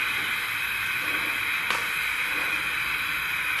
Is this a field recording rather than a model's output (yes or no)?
yes